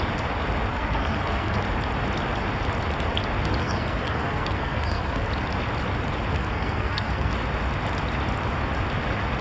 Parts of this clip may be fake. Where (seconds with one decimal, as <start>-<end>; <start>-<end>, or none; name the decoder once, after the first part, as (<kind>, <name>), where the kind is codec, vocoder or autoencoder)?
0.7-1.6 (codec, SNAC); 3.6-5.3; 6.3-7.3